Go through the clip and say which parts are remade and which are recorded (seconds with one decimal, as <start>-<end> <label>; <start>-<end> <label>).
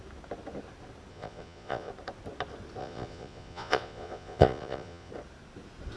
0.0-1.1 recorded; 1.1-1.9 remade; 1.9-2.8 recorded; 2.8-5.1 remade; 5.1-6.0 recorded